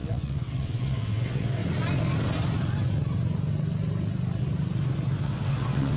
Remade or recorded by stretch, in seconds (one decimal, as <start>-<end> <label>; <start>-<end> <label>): 0.0-1.6 remade; 1.6-5.2 recorded; 5.2-6.0 remade